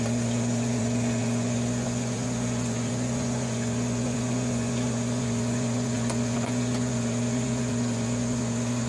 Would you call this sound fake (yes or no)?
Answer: yes